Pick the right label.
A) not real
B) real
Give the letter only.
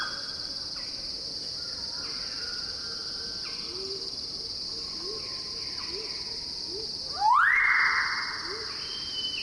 B